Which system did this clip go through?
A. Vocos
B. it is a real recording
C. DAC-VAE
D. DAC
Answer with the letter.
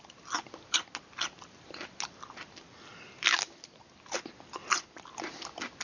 B